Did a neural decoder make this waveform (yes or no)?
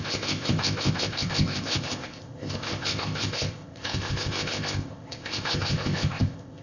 yes